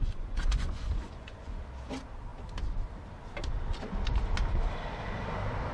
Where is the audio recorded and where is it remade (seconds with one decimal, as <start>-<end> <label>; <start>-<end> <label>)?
0.0-1.6 remade; 1.6-5.7 recorded